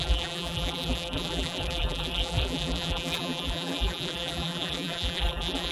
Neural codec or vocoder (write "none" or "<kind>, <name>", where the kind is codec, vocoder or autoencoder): vocoder, BigVGAN v2